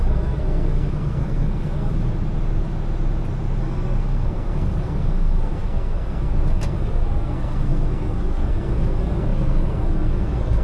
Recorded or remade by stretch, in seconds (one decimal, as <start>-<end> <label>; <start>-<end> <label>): 0.0-1.9 remade; 1.9-3.6 recorded; 3.6-10.6 remade